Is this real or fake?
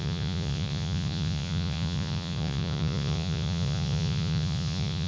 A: fake